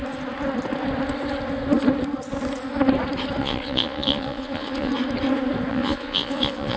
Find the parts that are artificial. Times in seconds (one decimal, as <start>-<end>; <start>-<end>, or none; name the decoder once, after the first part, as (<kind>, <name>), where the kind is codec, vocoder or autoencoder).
3.4-4.9 (vocoder, Vocos); 5.7-6.8